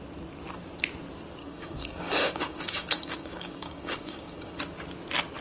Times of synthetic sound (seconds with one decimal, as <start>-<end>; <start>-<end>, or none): 1.4-4.6